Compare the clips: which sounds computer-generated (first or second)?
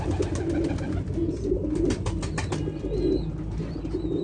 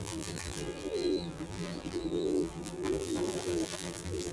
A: second